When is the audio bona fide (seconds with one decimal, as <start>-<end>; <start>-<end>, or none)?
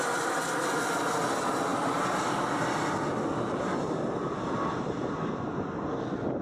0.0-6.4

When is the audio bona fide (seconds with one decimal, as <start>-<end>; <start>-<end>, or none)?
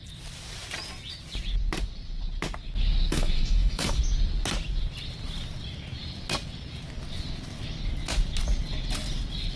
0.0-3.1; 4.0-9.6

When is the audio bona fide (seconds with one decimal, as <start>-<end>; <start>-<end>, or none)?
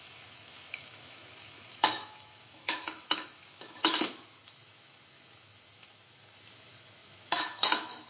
none